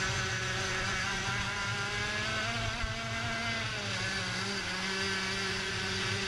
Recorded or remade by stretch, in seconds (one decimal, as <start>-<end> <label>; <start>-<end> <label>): 0.0-1.7 remade; 1.7-5.5 recorded; 5.5-6.3 remade